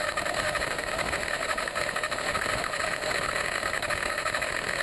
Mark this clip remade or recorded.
remade